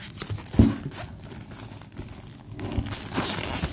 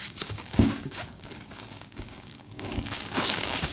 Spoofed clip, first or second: second